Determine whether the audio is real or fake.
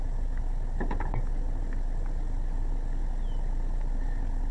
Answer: real